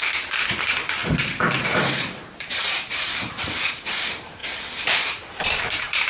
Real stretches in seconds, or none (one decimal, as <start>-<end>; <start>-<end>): none

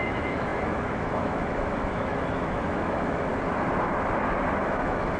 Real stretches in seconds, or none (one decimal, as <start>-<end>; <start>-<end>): 3.3-4.6

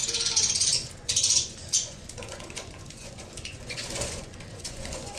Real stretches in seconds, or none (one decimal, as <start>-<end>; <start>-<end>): none

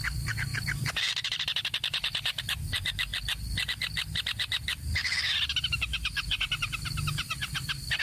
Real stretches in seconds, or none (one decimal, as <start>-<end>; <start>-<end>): 0.0-0.5; 2.4-8.0

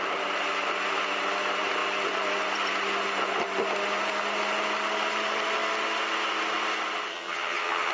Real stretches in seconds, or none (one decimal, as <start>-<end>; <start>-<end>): 0.0-7.1

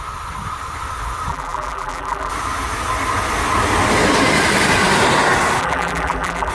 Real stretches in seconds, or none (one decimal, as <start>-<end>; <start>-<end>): 0.0-1.3; 2.3-5.6